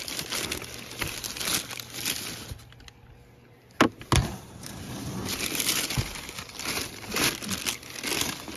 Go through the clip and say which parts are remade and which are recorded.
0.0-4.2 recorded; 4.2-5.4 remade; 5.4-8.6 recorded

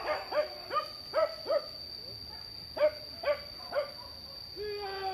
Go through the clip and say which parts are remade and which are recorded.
0.0-5.1 recorded

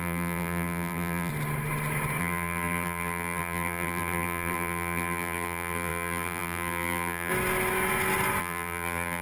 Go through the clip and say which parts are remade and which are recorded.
0.0-1.3 remade; 1.3-2.2 recorded; 2.2-7.3 remade; 7.3-8.4 recorded; 8.4-9.2 remade

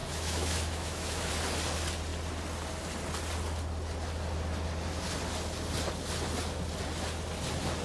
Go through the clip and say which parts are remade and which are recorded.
0.0-1.3 remade; 1.3-7.8 recorded

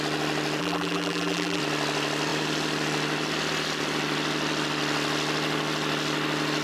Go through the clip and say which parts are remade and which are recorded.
0.0-0.6 recorded; 0.6-1.6 remade; 1.6-6.6 recorded

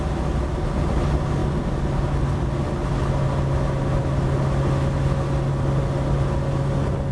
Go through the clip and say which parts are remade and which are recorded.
0.0-7.1 recorded

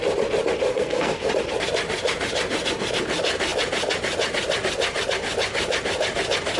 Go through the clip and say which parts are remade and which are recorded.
0.0-0.7 recorded; 0.7-1.3 remade; 1.3-6.6 recorded